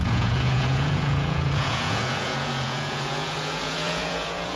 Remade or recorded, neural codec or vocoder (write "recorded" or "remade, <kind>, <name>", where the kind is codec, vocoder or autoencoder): remade, vocoder, Vocos